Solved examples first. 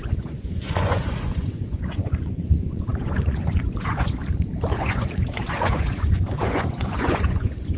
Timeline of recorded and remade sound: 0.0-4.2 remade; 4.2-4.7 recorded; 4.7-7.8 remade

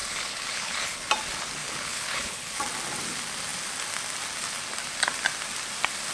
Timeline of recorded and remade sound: 0.0-1.1 remade; 1.1-1.6 recorded; 1.6-2.6 remade; 2.6-6.1 recorded

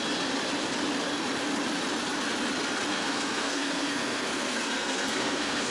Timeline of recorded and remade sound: 0.0-2.9 recorded; 2.9-5.7 remade

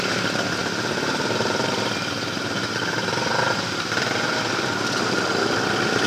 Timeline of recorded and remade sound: 0.0-6.1 recorded

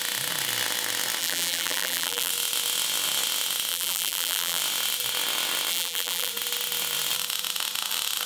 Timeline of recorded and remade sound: 0.0-1.2 recorded; 1.2-2.3 remade; 2.3-3.7 recorded; 3.7-4.6 remade; 4.6-5.7 recorded; 5.7-6.3 remade; 6.3-8.3 recorded

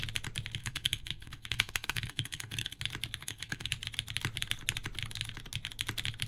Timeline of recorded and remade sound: 0.0-0.6 recorded; 0.6-2.8 remade; 2.8-3.2 recorded; 3.2-3.7 remade; 3.7-6.3 recorded

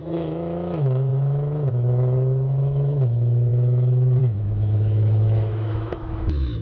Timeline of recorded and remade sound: 0.0-6.6 remade